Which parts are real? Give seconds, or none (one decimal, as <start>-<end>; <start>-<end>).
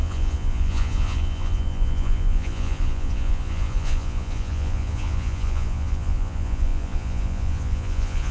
none